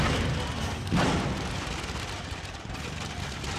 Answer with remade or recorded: recorded